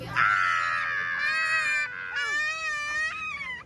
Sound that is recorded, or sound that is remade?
recorded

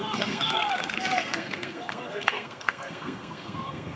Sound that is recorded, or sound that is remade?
remade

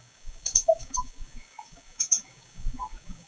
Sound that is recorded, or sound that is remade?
remade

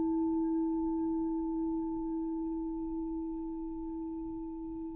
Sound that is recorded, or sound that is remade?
remade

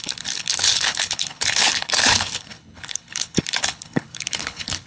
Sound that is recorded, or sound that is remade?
remade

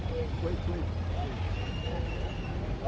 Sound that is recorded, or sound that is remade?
recorded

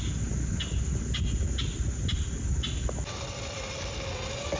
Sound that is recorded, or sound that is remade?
recorded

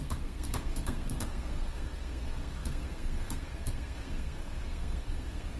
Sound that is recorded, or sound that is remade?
remade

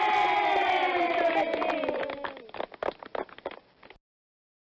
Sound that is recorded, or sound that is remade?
recorded